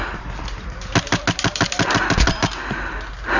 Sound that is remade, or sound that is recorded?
recorded